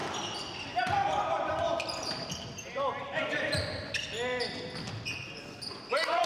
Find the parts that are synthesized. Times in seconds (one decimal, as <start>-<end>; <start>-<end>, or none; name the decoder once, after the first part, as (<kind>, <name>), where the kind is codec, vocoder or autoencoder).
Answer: 0.0-3.8 (vocoder, BigVGAN v2)